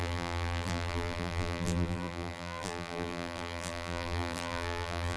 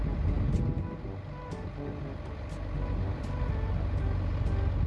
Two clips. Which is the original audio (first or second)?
second